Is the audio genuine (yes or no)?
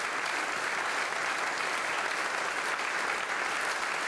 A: yes